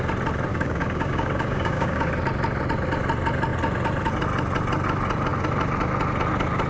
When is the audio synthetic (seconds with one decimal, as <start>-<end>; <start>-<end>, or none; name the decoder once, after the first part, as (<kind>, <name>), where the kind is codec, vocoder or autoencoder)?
0.5-2.1 (codec, DAC)